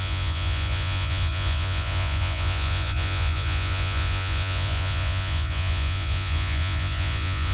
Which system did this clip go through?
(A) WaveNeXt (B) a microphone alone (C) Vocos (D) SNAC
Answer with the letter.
C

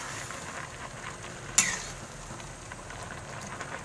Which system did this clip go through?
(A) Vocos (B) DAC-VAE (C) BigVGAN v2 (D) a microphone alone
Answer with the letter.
D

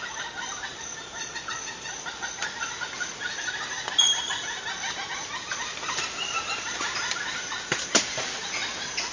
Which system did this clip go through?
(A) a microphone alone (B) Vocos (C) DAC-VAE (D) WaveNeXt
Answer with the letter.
A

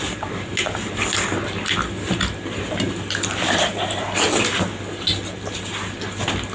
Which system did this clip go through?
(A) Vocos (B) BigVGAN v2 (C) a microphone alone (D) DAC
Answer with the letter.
C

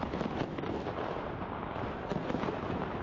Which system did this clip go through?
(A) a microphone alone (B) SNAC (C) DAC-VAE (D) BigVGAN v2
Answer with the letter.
A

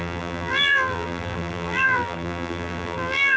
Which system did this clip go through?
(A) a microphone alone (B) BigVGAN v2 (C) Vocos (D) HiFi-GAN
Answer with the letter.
B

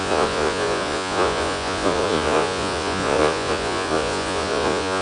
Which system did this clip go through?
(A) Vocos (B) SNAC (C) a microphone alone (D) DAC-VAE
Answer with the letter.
A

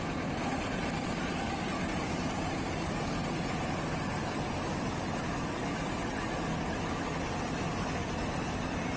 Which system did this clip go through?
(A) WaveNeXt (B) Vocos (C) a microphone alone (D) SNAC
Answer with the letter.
C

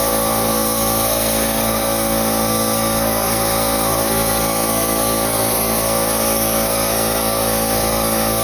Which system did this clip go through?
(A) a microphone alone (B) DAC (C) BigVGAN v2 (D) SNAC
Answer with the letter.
D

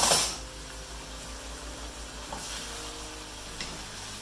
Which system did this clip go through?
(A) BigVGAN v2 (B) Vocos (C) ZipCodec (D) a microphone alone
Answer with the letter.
D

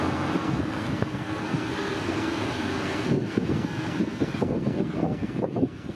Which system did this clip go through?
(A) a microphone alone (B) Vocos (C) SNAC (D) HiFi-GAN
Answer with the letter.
C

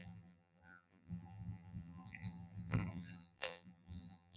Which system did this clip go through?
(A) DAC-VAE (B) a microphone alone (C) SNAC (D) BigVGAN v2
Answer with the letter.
D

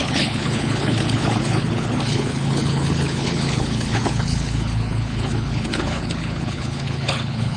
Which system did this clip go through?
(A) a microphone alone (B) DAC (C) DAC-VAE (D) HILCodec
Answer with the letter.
D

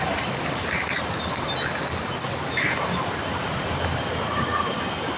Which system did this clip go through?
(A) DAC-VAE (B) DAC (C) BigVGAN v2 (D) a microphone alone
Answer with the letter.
D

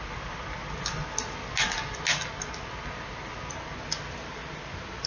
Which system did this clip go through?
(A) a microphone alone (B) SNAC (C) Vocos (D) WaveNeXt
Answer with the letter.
A